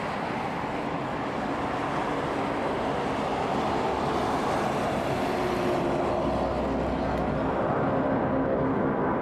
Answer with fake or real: real